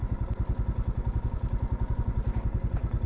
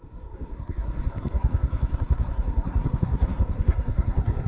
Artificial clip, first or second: second